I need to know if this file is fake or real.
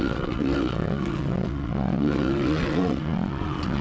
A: fake